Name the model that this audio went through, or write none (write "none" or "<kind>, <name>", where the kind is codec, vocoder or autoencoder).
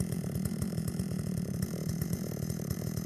vocoder, BigVGAN v2